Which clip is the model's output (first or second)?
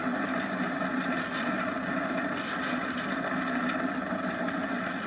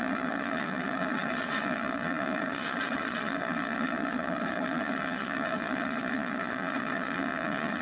second